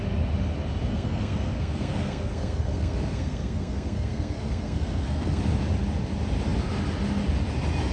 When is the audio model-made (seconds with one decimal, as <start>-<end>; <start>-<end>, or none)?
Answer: 0.9-5.4